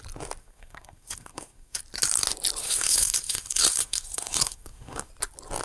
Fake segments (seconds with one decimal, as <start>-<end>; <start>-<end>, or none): 0.4-1.8; 2.6-5.1